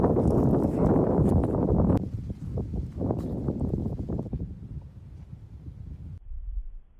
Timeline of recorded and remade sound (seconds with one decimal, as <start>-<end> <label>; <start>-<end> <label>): 0.0-7.0 recorded